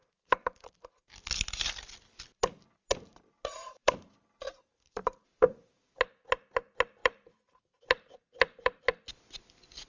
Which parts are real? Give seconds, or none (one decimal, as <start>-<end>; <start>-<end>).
0.0-3.1; 5.8-7.0; 8.8-9.9